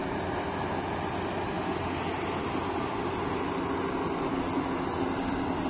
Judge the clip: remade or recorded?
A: recorded